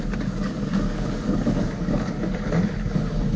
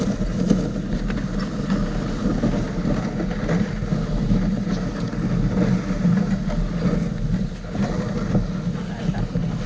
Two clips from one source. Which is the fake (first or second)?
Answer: first